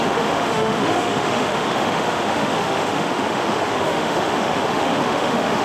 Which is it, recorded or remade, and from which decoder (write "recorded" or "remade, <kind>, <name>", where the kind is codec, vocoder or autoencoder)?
remade, autoencoder, DAC-VAE